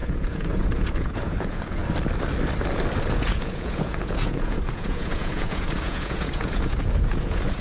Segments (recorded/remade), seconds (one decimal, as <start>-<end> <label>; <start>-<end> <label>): 0.0-1.8 remade; 1.8-3.1 recorded; 3.1-7.6 remade

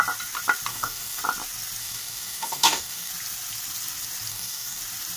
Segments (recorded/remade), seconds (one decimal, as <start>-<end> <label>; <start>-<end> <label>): 0.0-0.7 recorded; 0.7-1.2 remade; 1.2-1.8 recorded; 1.8-3.1 remade; 3.1-4.3 recorded; 4.3-4.8 remade; 4.8-5.2 recorded

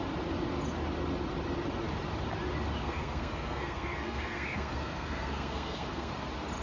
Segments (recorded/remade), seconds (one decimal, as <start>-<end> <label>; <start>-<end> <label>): 0.0-2.8 recorded; 2.8-6.1 remade; 6.1-6.6 recorded

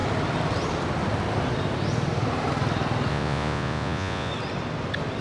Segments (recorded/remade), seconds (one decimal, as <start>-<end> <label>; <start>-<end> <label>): 0.0-3.1 recorded; 3.1-4.3 remade; 4.3-5.2 recorded

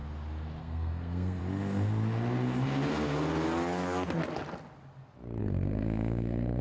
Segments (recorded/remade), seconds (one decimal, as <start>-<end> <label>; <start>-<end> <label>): 0.0-0.6 recorded; 0.6-1.4 remade; 1.4-5.4 recorded; 5.4-6.6 remade

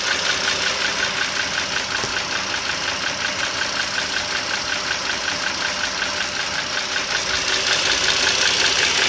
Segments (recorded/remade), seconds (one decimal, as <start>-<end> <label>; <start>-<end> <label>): 0.0-9.1 recorded

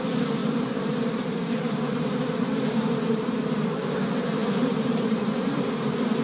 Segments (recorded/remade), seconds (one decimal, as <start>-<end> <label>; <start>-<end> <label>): 0.0-0.4 recorded; 0.4-2.1 remade; 2.1-4.4 recorded; 4.4-6.2 remade

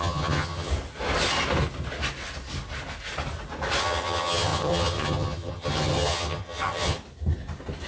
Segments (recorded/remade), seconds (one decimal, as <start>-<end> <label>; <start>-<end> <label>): 0.0-0.7 remade; 0.7-3.8 recorded; 3.8-7.0 remade; 7.0-7.9 recorded